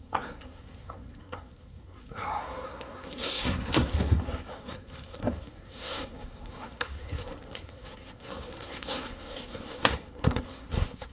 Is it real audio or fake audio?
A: fake